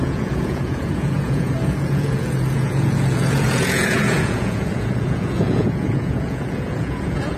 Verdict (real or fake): fake